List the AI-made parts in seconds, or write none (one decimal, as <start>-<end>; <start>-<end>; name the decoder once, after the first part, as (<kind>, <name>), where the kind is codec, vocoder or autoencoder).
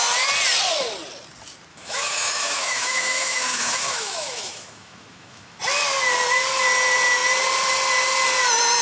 1.7-5.6 (autoencoder, DAC-VAE)